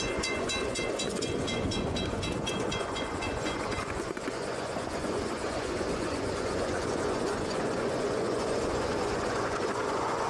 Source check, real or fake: fake